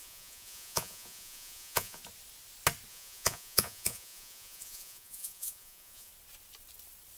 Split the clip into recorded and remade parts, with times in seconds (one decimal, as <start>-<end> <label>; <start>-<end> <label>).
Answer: 0.0-2.0 remade; 2.0-2.9 recorded; 2.9-6.1 remade; 6.1-7.2 recorded